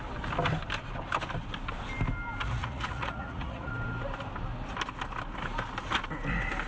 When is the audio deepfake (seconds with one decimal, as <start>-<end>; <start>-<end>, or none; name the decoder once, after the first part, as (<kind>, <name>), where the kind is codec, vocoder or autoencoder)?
2.4-3.7 (vocoder, Vocos)